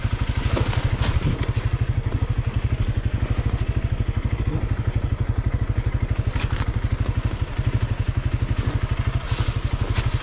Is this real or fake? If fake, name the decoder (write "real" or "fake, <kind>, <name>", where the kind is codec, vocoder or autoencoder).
real